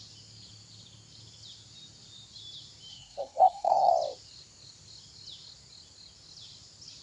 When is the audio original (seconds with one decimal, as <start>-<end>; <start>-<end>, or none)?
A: 0.0-2.9; 3.9-7.0